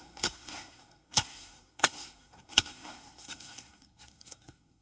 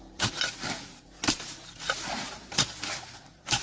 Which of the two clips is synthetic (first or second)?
first